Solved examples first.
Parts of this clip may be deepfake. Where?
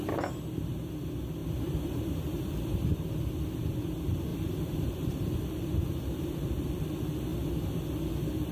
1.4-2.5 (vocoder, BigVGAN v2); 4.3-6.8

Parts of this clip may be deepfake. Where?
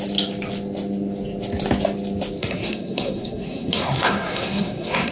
2.4-5.1 (codec, SNAC)